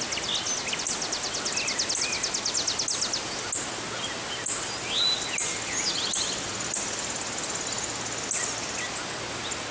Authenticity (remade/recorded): recorded